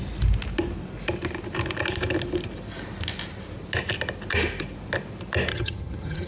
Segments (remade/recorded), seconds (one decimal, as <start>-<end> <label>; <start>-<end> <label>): 0.0-5.5 recorded; 5.5-6.3 remade